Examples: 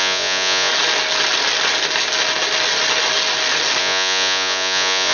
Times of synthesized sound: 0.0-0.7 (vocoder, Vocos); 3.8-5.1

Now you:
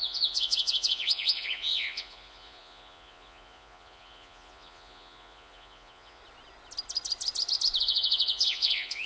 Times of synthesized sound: 0.0-6.2 (vocoder, Vocos); 7.8-9.1

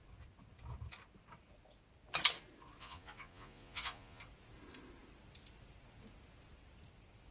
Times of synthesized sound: 2.8-4.2 (vocoder, Vocos)

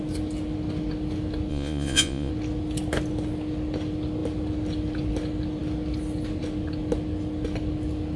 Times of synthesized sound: 1.5-2.3 (vocoder, Vocos)

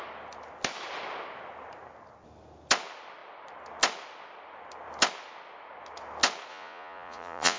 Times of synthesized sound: 6.5-7.6 (vocoder, Vocos)

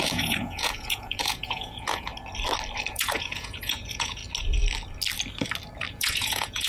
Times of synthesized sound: 0.0-2.1 (vocoder, Vocos); 2.9-4.2; 5.9-6.7